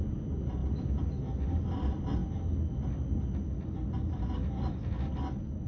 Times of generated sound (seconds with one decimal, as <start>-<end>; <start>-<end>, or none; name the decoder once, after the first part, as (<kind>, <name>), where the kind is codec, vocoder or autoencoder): none